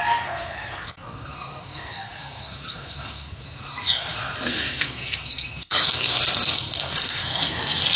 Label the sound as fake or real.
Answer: fake